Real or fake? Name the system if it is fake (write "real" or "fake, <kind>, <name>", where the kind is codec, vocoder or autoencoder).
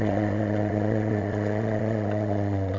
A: fake, vocoder, WaveNeXt